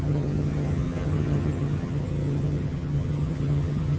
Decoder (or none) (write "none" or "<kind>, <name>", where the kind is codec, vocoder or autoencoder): vocoder, HiFi-GAN